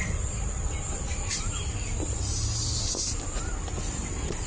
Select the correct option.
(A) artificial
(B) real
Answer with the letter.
A